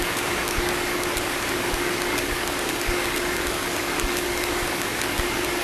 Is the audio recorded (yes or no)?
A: no